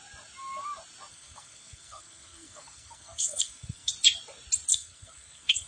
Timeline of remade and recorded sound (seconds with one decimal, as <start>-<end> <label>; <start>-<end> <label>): 0.0-1.1 recorded; 1.1-3.9 remade; 3.9-4.7 recorded; 4.7-5.7 remade

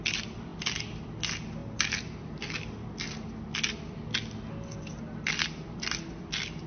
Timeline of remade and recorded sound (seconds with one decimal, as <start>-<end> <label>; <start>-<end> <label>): 0.0-6.7 recorded

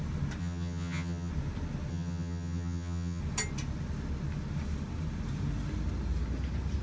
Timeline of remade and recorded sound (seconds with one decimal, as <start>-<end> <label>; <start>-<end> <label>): 0.0-0.4 recorded; 0.4-1.3 remade; 1.3-1.9 recorded; 1.9-3.2 remade; 3.2-6.8 recorded

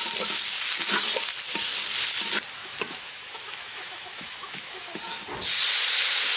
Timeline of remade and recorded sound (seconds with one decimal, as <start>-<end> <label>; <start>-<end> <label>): 0.0-2.6 recorded; 2.6-5.0 remade; 5.0-6.4 recorded